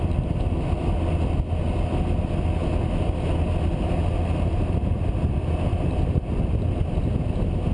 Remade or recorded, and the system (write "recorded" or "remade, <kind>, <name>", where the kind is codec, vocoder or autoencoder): recorded